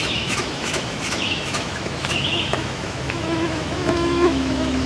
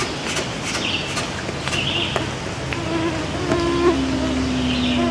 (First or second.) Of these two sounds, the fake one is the first